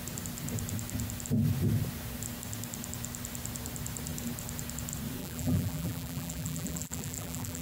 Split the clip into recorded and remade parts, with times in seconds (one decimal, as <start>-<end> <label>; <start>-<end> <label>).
0.0-5.2 recorded; 5.2-7.6 remade